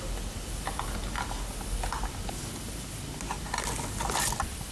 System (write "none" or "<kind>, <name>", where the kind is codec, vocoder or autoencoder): none